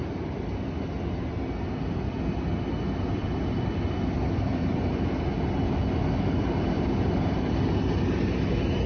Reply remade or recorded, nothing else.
recorded